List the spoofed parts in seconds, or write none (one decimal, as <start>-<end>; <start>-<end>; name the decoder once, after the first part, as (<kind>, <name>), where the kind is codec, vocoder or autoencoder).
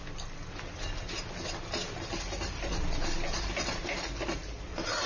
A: none